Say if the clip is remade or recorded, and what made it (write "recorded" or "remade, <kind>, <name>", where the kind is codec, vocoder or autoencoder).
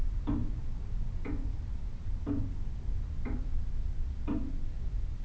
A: recorded